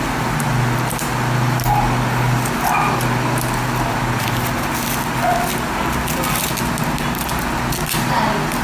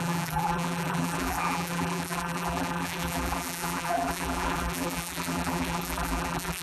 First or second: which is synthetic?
second